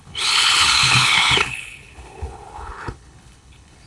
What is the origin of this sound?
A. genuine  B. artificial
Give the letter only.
B